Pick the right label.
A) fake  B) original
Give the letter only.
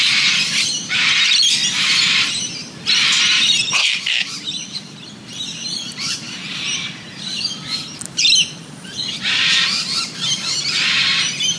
A